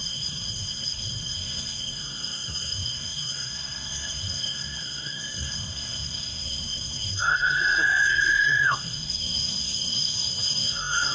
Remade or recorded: remade